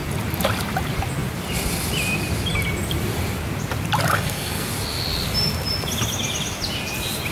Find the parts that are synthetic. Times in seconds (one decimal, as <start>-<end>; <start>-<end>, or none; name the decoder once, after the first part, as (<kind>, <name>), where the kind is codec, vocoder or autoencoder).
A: 4.1-4.7 (codec, SNAC)